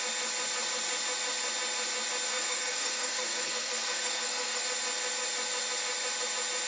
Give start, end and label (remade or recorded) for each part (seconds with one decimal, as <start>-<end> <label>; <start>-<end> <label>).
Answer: 0.0-2.3 recorded; 2.3-4.6 remade; 4.6-6.7 recorded